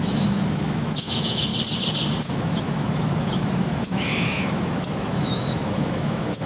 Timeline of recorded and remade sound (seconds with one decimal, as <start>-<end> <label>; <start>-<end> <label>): 0.0-1.5 remade; 1.5-2.2 recorded; 2.2-6.5 remade